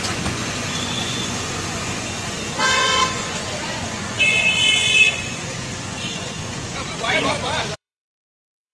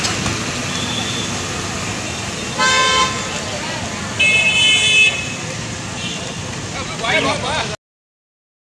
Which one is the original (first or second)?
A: second